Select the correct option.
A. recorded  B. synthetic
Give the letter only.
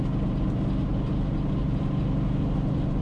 A